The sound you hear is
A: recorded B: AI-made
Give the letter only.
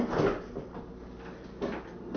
A